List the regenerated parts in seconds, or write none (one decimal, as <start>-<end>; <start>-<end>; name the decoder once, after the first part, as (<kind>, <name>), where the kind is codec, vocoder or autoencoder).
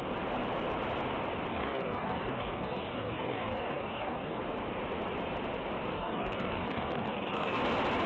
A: 1.5-4.4 (codec, DAC); 5.9-7.6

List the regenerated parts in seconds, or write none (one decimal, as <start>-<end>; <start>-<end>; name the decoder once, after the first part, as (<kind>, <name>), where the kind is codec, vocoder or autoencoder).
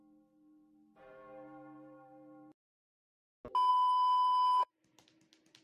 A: 3.7-4.7 (codec, SNAC)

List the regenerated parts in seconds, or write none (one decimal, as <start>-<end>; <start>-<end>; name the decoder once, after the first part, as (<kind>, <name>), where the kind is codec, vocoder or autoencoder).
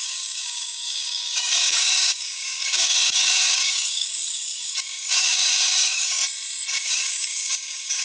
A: 0.0-6.2 (codec, DAC); 6.8-8.0